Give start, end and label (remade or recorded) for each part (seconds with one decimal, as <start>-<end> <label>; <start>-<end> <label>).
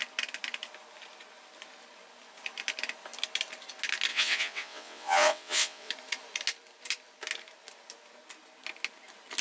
0.0-4.1 recorded; 4.1-5.9 remade; 5.9-9.4 recorded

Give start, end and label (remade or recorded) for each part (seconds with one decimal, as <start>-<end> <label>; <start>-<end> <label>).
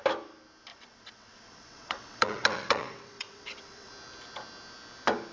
0.0-0.7 recorded; 0.7-3.9 remade; 3.9-5.3 recorded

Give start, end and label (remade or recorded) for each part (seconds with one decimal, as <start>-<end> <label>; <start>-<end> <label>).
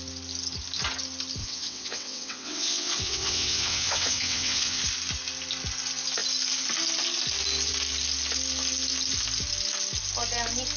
0.0-1.4 recorded; 1.4-4.8 remade; 4.8-10.8 recorded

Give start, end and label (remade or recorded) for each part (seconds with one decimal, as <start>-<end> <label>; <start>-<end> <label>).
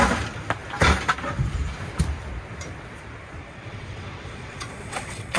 0.0-3.4 recorded; 3.4-5.4 remade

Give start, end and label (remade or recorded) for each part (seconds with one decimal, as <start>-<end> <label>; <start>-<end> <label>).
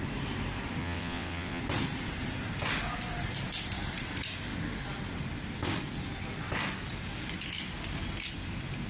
0.0-0.8 recorded; 0.8-1.6 remade; 1.6-8.9 recorded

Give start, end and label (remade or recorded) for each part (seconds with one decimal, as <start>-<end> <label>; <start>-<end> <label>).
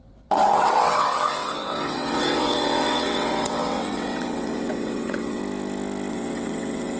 0.0-5.4 remade; 5.4-6.1 recorded; 6.1-7.0 remade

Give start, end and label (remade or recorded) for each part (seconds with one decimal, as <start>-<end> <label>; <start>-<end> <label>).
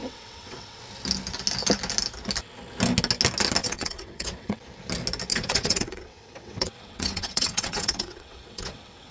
0.0-0.8 remade; 0.8-3.6 recorded; 3.6-4.6 remade; 4.6-5.3 recorded; 5.3-9.1 remade